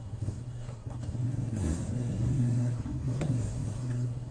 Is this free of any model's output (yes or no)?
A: no